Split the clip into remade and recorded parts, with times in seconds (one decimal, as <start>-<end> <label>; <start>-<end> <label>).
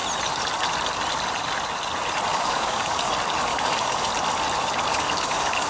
0.0-2.3 recorded; 2.3-3.1 remade; 3.1-3.5 recorded; 3.5-4.1 remade; 4.1-4.9 recorded; 4.9-5.7 remade